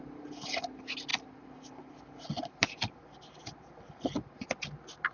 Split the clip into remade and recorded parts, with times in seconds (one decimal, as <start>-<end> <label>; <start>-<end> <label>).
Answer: 0.0-5.1 recorded

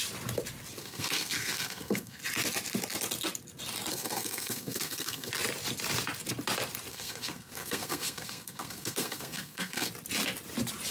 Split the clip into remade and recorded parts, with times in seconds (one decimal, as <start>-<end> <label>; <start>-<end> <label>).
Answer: 0.0-0.8 recorded; 0.8-2.2 remade; 2.2-3.9 recorded; 3.9-5.3 remade; 5.3-6.9 recorded; 6.9-9.9 remade; 9.9-10.9 recorded

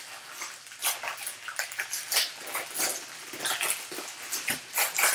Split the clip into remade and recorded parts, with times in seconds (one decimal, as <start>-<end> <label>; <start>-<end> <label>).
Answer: 0.0-5.1 recorded

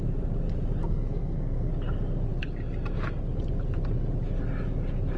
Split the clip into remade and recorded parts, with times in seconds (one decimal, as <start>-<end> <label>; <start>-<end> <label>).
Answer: 0.0-0.8 recorded; 0.8-1.7 remade; 1.7-5.2 recorded

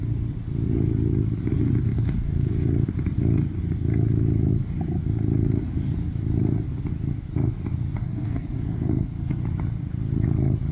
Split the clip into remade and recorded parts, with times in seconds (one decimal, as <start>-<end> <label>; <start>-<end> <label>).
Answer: 0.0-1.9 recorded; 1.9-2.5 remade; 2.5-8.0 recorded; 8.0-9.4 remade; 9.4-10.7 recorded

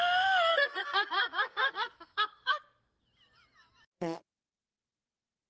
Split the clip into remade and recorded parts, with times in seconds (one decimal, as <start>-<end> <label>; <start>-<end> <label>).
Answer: 0.0-0.5 recorded; 0.5-3.0 remade; 3.0-3.9 recorded; 3.9-5.0 remade; 5.0-5.5 recorded

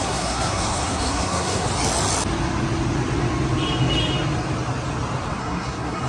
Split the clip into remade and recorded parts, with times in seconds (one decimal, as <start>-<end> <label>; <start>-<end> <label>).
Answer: 0.0-1.7 remade; 1.7-5.4 recorded; 5.4-6.1 remade